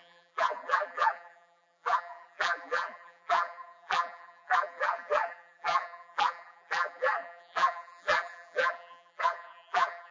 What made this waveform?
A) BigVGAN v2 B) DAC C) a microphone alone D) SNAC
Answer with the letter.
A